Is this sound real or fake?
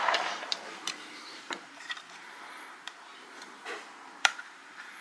fake